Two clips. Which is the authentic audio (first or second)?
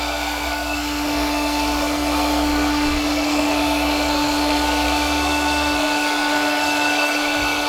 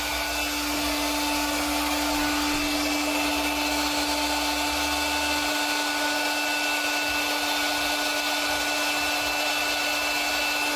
second